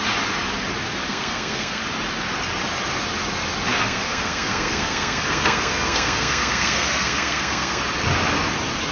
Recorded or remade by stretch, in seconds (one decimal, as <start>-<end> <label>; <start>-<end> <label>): 0.0-1.1 recorded; 1.1-1.8 remade; 1.8-3.7 recorded; 3.7-7.8 remade; 7.8-8.9 recorded